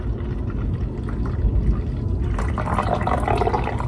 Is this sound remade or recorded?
recorded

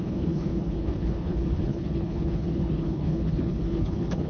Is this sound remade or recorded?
remade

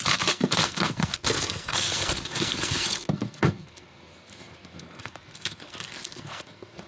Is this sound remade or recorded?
remade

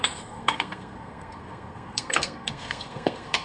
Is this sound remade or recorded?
remade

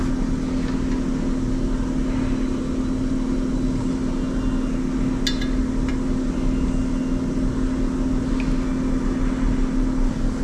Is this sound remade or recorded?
recorded